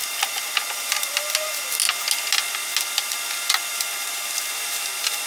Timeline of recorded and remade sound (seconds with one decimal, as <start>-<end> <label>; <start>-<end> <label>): 0.0-5.3 recorded